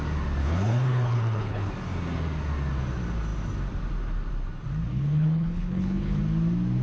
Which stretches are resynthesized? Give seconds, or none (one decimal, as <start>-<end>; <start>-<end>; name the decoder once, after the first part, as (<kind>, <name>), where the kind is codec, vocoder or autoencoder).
0.4-1.7 (codec, HILCodec); 4.9-6.2